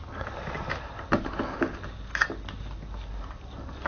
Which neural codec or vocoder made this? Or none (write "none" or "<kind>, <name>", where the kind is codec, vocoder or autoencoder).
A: none